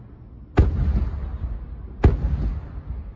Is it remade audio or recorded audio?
recorded